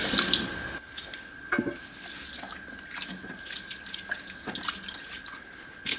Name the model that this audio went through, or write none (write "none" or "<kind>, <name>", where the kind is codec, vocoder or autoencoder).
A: none